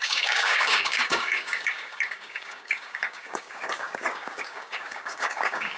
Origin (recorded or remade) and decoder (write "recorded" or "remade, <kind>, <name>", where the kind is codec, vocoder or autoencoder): remade, codec, DAC